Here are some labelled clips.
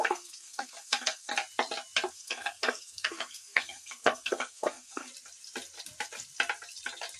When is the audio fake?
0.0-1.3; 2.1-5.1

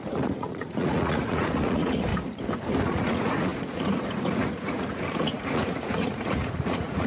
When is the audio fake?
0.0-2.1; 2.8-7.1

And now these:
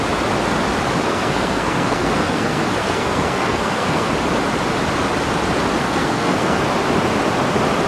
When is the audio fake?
1.0-4.1; 5.8-6.6

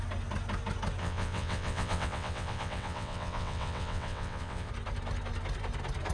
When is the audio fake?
1.0-4.7

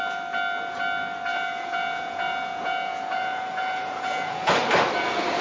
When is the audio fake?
1.3-4.5

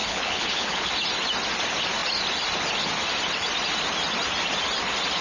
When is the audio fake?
0.0-0.9

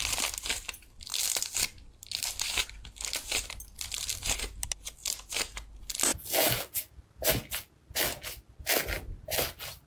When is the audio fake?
none

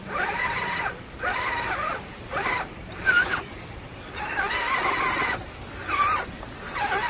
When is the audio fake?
1.3-4.3